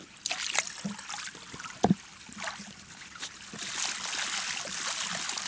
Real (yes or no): yes